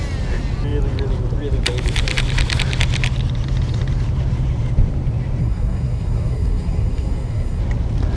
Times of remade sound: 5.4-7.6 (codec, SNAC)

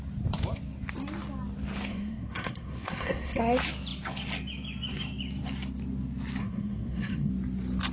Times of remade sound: 1.9-3.4 (codec, SNAC); 6.4-7.3